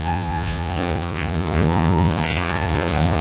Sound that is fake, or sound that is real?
fake